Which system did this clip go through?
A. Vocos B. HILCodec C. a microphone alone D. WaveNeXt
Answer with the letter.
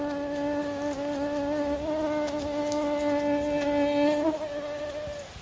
C